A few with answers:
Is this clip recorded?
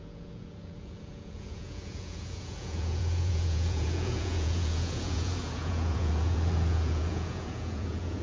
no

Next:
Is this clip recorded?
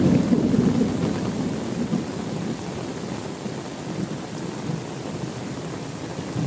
yes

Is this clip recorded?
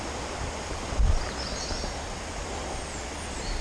yes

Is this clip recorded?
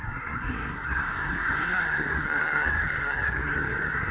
no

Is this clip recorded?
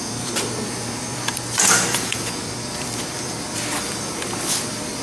no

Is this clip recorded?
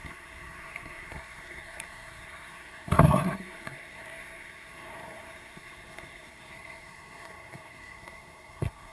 no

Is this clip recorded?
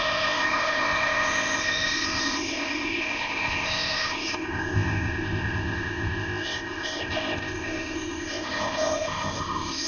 no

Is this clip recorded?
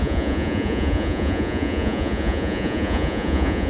no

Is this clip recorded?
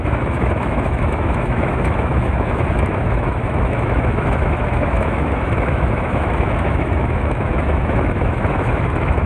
no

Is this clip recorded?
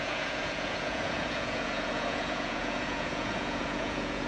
no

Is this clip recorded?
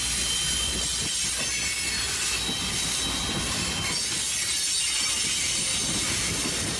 yes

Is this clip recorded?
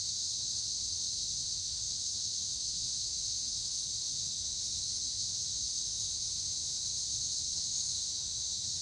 no